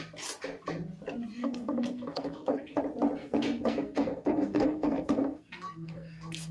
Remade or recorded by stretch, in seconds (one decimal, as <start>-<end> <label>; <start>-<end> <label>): 0.0-1.4 recorded; 1.4-2.8 remade; 2.8-3.2 recorded; 3.2-6.5 remade